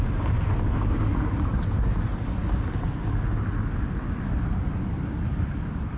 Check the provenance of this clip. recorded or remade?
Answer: recorded